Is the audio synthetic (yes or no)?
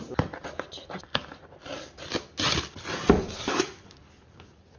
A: no